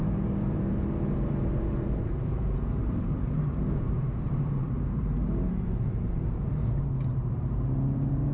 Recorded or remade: remade